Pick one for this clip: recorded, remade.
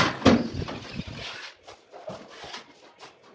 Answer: recorded